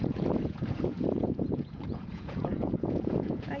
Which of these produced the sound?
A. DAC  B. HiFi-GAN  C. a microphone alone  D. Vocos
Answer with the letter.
D